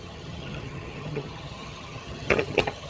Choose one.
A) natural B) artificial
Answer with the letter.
B